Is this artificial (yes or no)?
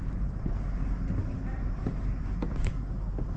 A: no